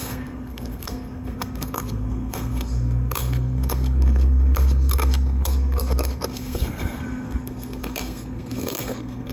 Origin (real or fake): fake